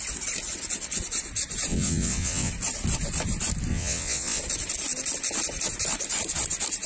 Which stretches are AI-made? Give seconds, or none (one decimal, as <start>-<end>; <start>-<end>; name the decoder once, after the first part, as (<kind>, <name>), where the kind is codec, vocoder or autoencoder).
1.7-2.5 (vocoder, WaveNeXt); 3.7-4.4